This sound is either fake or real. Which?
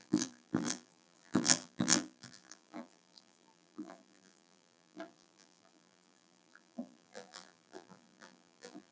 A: fake